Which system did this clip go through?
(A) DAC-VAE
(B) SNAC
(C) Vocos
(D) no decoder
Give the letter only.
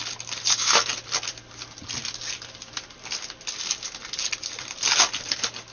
D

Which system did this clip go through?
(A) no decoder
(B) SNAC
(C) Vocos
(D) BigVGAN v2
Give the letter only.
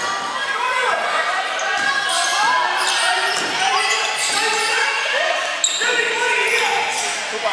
A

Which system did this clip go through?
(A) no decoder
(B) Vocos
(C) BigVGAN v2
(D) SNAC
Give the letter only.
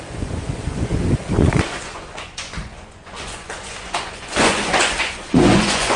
B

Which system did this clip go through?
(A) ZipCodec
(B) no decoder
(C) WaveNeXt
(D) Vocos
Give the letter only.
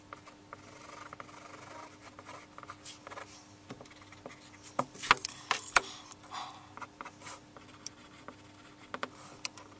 B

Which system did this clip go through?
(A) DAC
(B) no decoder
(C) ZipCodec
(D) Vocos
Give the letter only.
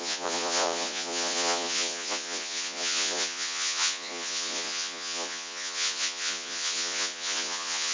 D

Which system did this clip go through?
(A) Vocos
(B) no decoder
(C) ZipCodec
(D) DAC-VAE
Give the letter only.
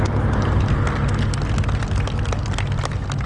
B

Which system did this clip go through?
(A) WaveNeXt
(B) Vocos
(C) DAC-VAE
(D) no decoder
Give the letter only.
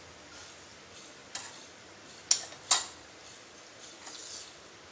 D